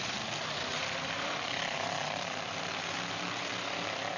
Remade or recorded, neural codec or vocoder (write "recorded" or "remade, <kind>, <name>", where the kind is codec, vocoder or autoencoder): remade, vocoder, BigVGAN v2